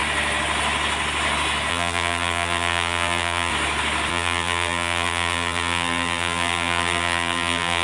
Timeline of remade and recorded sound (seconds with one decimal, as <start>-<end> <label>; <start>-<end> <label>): 0.0-1.7 recorded; 1.7-3.5 remade; 3.5-4.1 recorded; 4.1-7.8 remade